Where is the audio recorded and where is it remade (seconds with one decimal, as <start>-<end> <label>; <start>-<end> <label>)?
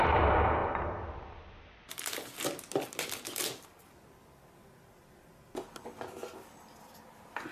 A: 0.0-7.5 recorded